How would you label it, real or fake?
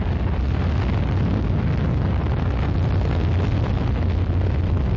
real